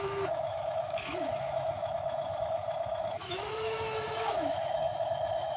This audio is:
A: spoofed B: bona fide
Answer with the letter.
A